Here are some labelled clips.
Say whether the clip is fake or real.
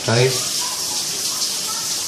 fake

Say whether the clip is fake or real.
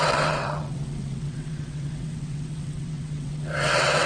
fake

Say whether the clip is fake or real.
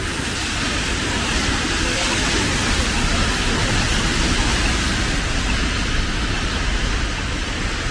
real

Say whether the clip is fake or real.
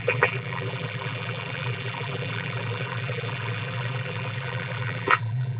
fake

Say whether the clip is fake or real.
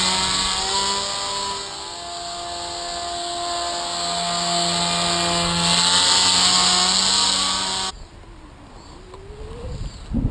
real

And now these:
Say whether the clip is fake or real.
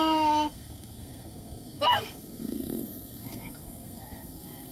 fake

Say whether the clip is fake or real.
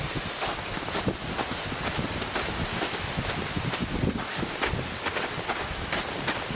real